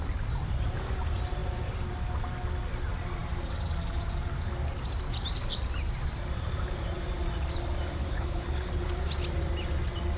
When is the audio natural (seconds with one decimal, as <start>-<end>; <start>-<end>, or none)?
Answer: 0.0-8.0; 8.9-10.2

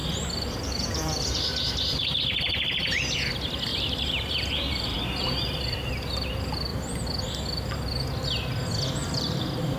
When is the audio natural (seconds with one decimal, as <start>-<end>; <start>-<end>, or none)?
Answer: 2.2-3.7; 5.9-9.0